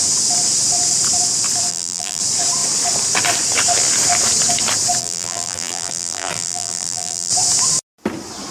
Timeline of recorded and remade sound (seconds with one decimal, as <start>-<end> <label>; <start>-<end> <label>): 0.0-1.7 recorded; 1.7-2.2 remade; 2.2-5.0 recorded; 5.0-7.3 remade; 7.3-8.5 recorded